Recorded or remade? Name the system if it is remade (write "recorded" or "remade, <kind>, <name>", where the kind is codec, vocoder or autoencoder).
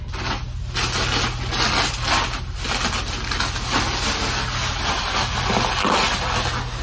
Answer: recorded